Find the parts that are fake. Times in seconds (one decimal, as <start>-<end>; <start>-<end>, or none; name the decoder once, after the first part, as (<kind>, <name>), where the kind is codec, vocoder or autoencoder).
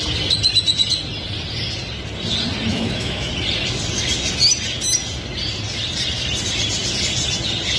2.7-3.3 (autoencoder, DAC-VAE)